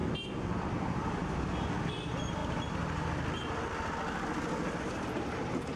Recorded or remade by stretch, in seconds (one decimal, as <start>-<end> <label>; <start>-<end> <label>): 0.0-1.9 recorded; 1.9-2.4 remade; 2.4-4.8 recorded; 4.8-5.8 remade

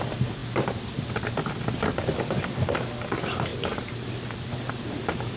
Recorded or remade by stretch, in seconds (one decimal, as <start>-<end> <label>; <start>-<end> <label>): 0.0-5.4 recorded

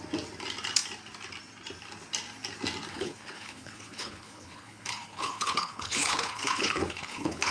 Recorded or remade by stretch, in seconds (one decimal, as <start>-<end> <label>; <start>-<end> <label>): 0.0-2.9 recorded; 2.9-7.5 remade

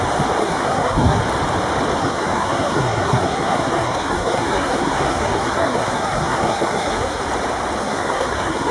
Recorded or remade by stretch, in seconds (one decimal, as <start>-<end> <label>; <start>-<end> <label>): 0.0-0.4 recorded; 0.4-1.2 remade; 1.2-2.0 recorded; 2.0-7.2 remade; 7.2-7.8 recorded; 7.8-8.7 remade

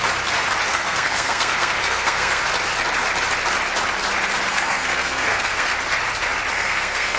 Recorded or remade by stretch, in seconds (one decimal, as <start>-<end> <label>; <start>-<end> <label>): 0.0-0.7 recorded; 0.7-2.4 remade; 2.4-4.5 recorded; 4.5-5.7 remade; 5.7-6.5 recorded; 6.5-7.2 remade

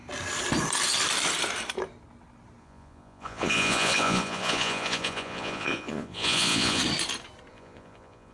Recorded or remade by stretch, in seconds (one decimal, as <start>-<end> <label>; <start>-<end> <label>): 0.0-2.6 recorded; 2.6-6.8 remade; 6.8-7.5 recorded; 7.5-8.3 remade